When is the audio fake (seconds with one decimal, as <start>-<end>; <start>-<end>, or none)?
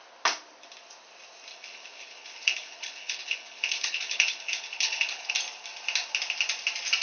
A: 1.5-5.3